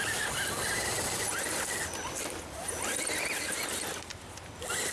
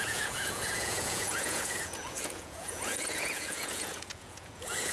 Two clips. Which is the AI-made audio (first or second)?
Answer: second